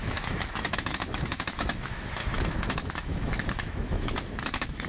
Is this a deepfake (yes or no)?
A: yes